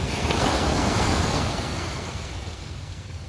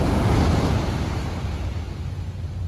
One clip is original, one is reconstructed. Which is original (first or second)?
second